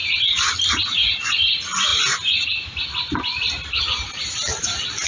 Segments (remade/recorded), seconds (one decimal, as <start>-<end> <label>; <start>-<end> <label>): 0.0-1.9 recorded; 1.9-3.8 remade; 3.8-5.1 recorded